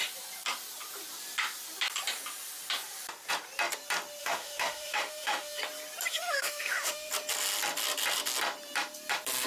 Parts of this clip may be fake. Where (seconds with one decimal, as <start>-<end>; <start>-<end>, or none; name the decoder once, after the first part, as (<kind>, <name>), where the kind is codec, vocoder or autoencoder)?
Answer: 4.2-5.6 (autoencoder, DAC-VAE); 6.1-7.1